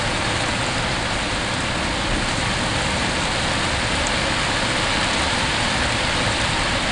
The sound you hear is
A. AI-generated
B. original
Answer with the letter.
B